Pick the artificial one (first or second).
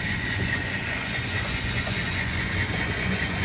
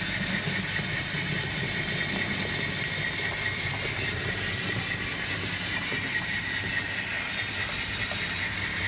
first